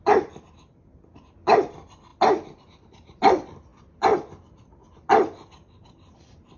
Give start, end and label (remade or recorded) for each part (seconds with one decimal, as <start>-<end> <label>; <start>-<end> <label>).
0.0-6.6 recorded